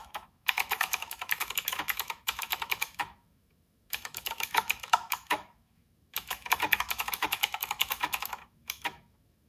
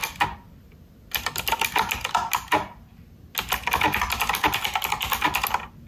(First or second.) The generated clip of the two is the first